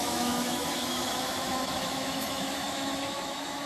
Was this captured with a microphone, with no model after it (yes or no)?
no